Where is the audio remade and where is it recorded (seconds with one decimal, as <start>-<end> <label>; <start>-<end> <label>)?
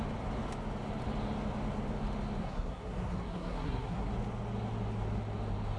0.0-2.4 recorded; 2.4-4.1 remade; 4.1-5.8 recorded